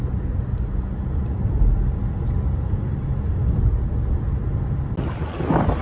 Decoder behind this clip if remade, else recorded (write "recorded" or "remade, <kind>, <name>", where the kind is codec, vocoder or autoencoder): recorded